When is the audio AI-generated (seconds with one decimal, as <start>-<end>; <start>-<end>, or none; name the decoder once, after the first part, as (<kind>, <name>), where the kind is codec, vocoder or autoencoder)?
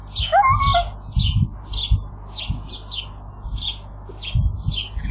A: none